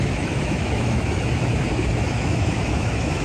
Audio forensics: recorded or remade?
remade